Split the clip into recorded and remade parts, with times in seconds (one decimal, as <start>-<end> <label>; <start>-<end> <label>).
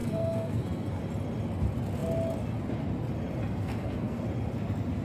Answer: 0.0-1.0 remade; 1.0-3.4 recorded; 3.4-4.2 remade; 4.2-5.0 recorded